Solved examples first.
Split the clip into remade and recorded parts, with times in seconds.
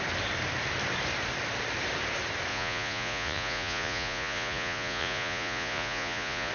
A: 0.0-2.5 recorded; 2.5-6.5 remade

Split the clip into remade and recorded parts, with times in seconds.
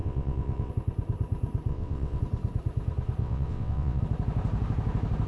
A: 0.0-0.7 remade; 0.7-1.7 recorded; 1.7-2.2 remade; 2.2-3.2 recorded; 3.2-4.0 remade; 4.0-5.3 recorded